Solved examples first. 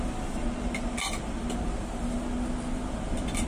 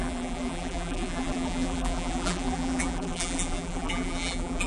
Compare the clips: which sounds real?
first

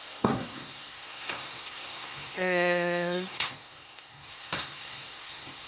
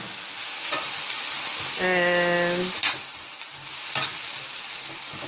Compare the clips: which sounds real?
second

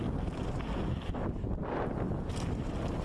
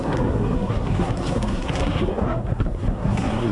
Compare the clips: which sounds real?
first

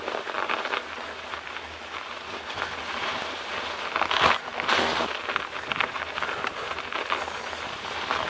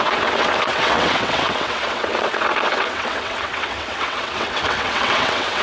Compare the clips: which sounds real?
first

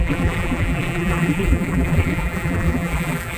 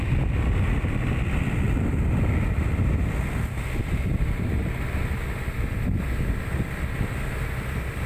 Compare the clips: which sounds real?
second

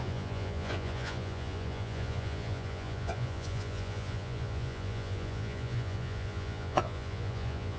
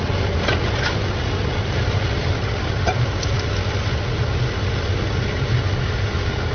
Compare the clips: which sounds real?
second